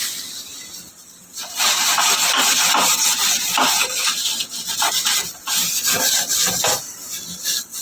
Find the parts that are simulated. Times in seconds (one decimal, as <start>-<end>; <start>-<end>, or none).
none